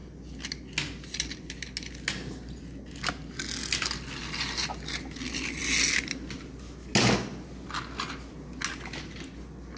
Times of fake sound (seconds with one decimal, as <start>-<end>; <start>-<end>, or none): none

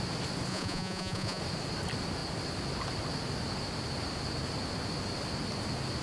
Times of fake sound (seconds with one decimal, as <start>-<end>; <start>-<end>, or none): 0.5-1.4

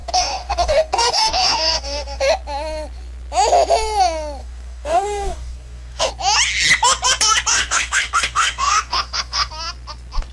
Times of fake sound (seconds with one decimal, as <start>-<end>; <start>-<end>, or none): 0.0-2.2; 4.4-6.1; 7.5-9.5

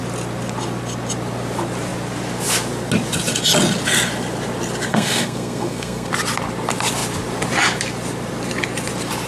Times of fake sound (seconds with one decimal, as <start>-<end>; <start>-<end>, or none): 4.9-6.1

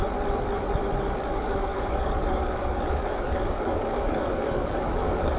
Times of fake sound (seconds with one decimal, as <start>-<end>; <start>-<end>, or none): 1.0-5.4